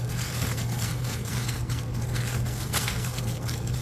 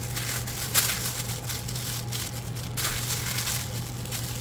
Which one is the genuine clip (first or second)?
second